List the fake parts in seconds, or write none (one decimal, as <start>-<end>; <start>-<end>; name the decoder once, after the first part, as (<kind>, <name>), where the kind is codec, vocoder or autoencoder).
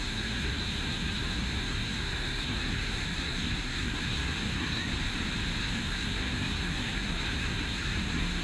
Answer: 0.0-4.9 (codec, SNAC); 5.6-8.4